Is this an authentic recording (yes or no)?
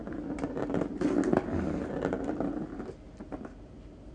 yes